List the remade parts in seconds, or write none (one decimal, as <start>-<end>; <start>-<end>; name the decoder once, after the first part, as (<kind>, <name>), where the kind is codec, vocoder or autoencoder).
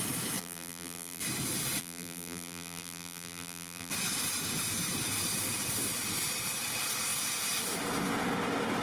0.4-1.2 (vocoder, BigVGAN v2); 1.8-3.9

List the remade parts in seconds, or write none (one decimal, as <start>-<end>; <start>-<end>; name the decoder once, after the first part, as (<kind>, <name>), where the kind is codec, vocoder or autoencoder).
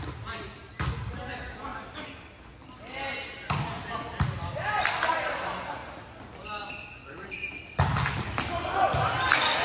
none